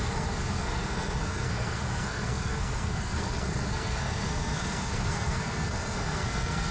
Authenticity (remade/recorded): remade